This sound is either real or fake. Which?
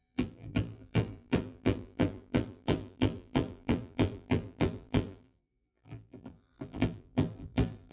fake